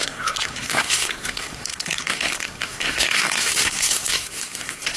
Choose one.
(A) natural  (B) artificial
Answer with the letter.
B